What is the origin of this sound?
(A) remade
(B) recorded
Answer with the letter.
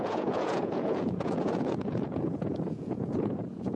A